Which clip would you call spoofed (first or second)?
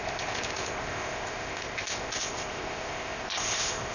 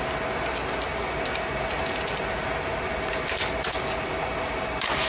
first